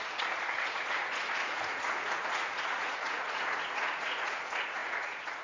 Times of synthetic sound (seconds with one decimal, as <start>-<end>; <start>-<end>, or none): 0.0-5.4